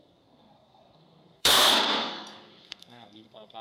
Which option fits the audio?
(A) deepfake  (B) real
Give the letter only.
A